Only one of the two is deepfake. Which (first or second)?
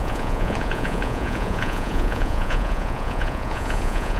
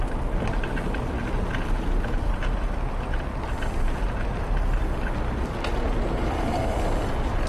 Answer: first